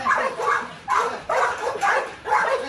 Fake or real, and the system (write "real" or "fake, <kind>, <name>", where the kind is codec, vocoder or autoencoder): fake, vocoder, BigVGAN v2